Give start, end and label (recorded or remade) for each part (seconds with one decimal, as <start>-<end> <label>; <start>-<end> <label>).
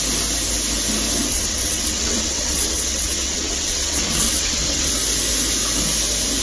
0.0-1.3 recorded; 1.3-4.9 remade; 4.9-6.4 recorded